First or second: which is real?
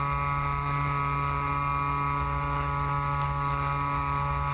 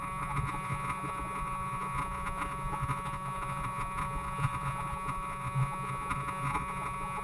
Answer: first